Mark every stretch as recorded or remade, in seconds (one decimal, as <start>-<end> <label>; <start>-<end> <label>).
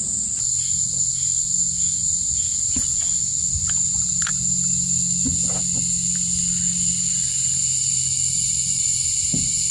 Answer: 0.0-9.7 recorded